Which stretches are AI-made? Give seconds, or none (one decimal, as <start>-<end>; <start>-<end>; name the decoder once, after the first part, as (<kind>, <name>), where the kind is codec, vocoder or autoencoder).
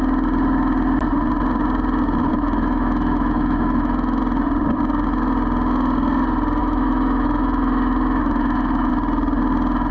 2.3-4.2 (autoencoder, DAC-VAE); 6.6-8.9